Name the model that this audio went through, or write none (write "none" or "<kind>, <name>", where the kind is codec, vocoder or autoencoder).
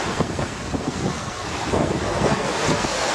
codec, SNAC